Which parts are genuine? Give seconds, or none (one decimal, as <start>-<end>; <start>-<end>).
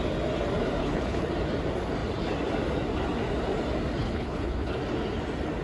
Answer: 0.0-0.8; 1.3-4.0; 4.8-5.6